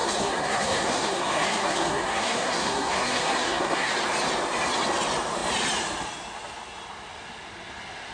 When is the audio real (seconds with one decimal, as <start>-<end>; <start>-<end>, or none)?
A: 3.9-8.1